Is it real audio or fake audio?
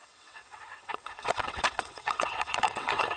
fake